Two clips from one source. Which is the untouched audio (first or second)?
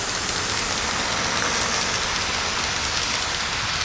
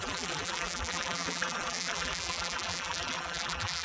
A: first